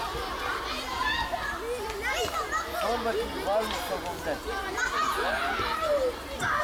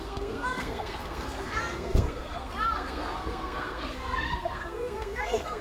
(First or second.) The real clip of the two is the first